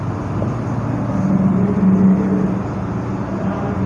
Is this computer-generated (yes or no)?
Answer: no